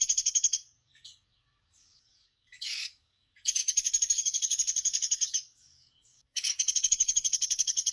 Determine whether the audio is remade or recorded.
remade